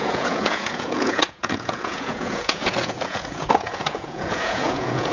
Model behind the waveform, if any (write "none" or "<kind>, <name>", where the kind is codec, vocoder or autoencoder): vocoder, Vocos